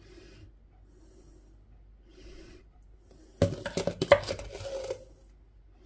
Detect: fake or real real